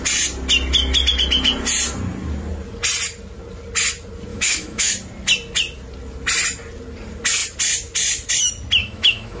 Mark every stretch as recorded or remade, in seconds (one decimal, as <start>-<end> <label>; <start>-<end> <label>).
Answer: 0.0-4.3 recorded; 4.3-4.9 remade; 4.9-8.8 recorded; 8.8-9.4 remade